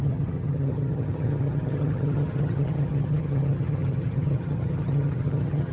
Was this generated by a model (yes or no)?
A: yes